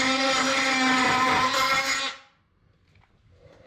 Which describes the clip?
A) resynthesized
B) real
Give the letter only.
B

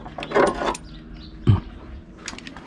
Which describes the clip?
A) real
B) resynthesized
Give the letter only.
A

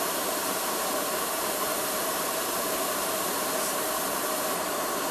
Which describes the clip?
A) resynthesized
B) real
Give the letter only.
A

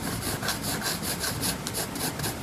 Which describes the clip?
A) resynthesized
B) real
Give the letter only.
B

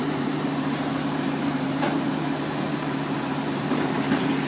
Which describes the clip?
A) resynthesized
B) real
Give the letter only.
A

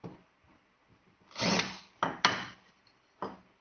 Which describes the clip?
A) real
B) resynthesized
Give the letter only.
A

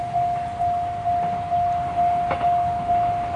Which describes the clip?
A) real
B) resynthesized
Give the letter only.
A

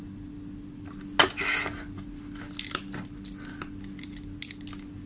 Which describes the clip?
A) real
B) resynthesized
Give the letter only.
A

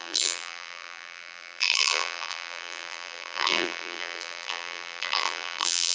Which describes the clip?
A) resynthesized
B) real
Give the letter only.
A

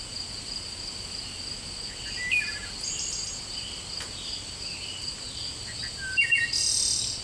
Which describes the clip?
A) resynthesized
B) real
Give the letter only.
B